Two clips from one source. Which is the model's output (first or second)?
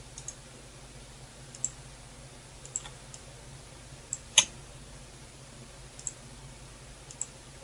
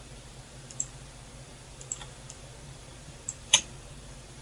second